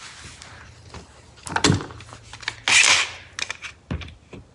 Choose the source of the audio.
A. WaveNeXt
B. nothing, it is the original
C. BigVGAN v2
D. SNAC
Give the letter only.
B